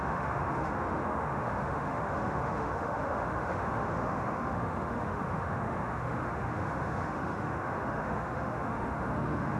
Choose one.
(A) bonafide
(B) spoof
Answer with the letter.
B